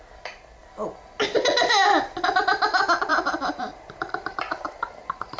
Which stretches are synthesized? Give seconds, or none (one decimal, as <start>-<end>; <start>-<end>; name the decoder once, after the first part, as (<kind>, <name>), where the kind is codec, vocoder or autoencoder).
3.1-5.4 (vocoder, BigVGAN v2)